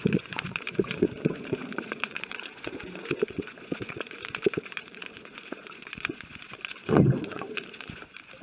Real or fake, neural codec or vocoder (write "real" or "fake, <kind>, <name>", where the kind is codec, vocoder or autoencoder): fake, vocoder, Vocos